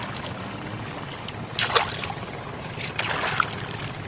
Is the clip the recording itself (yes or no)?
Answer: yes